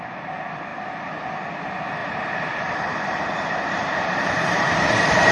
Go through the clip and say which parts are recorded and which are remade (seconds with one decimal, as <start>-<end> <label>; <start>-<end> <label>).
0.0-2.0 recorded; 2.0-5.3 remade